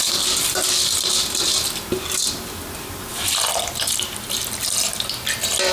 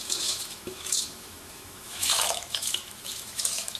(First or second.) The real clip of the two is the first